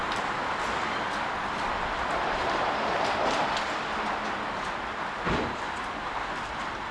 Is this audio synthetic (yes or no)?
no